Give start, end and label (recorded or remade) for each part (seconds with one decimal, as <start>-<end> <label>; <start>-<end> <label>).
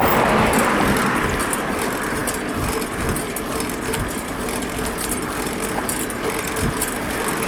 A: 0.0-7.5 recorded